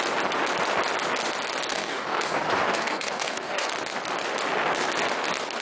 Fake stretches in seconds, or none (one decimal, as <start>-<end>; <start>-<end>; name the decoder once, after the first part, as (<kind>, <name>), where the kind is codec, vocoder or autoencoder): 1.7-3.7 (codec, DAC)